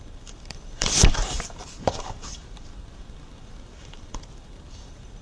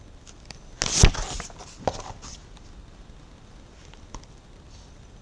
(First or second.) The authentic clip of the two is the second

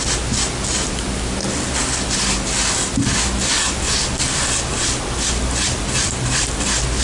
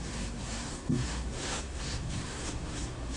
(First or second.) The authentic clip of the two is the first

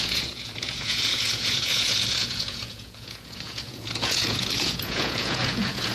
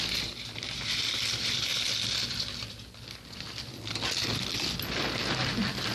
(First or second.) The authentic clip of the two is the second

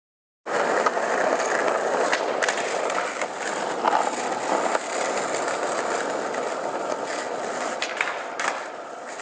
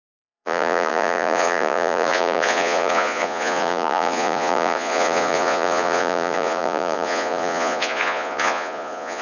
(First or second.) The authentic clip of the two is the first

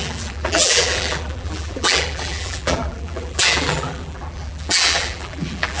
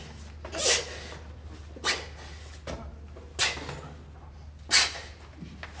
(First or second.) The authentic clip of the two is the second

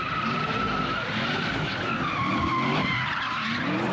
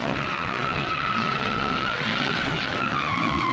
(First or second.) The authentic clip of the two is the first